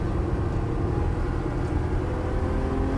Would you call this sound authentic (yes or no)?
yes